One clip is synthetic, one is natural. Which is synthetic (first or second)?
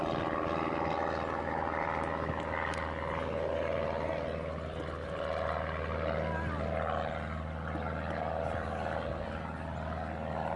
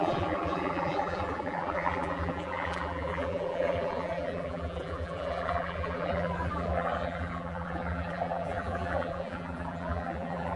second